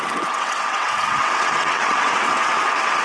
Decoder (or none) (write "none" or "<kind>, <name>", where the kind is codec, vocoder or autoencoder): vocoder, WaveNeXt